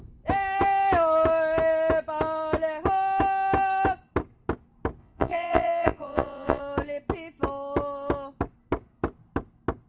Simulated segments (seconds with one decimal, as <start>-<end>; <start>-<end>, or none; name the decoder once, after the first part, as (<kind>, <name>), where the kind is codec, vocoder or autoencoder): 5.0-6.6 (vocoder, Vocos)